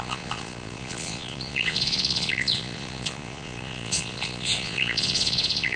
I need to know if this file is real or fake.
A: fake